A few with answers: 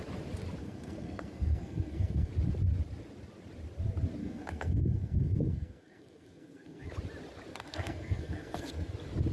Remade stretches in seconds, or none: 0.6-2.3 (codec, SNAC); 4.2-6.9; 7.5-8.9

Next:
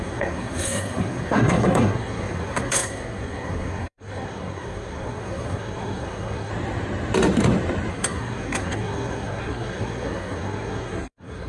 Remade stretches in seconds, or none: 0.0-6.5 (codec, SNAC); 7.9-11.5

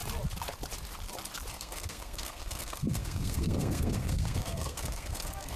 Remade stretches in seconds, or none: 1.5-5.6 (codec, SNAC)

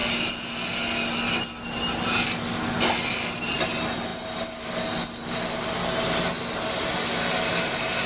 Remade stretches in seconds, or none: none

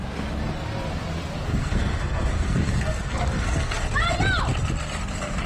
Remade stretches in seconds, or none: 1.5-3.8 (codec, SNAC)